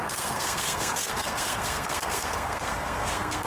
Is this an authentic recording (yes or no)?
no